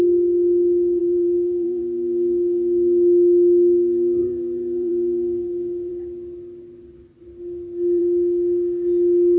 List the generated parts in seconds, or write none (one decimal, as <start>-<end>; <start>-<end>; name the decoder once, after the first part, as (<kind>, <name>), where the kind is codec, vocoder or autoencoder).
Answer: 1.0-1.8 (vocoder, BigVGAN v2); 4.2-4.9